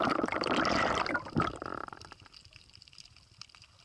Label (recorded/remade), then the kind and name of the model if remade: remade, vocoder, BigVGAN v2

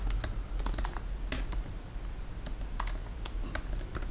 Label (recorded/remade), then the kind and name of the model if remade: recorded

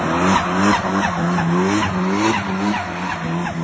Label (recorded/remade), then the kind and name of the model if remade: recorded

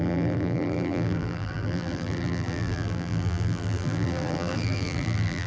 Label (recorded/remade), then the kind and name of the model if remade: remade, vocoder, BigVGAN v2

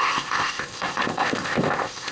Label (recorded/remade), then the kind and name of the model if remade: remade, codec, ZipCodec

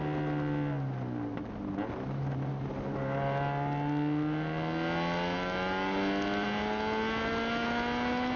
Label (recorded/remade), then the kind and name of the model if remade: recorded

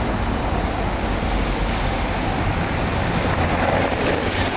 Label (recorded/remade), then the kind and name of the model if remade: recorded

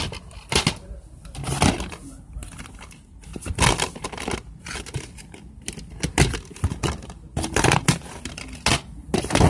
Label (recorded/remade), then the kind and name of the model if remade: recorded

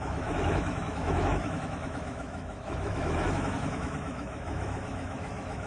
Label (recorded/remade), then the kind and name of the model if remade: remade, autoencoder, DAC-VAE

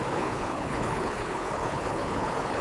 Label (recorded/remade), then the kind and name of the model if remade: remade, codec, HILCodec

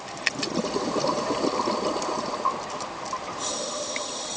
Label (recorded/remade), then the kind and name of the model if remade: recorded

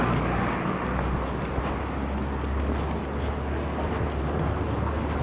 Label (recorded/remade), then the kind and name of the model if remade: recorded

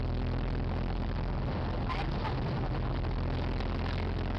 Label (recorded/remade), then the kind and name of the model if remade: recorded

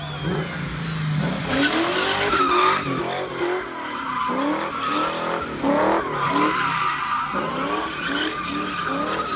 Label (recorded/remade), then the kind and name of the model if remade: recorded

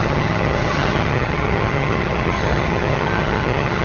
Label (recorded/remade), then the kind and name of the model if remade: remade, vocoder, HiFi-GAN